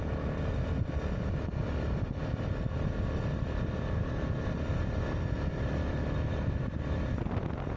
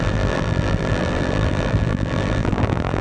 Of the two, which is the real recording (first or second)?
first